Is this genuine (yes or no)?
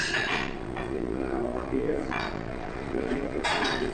no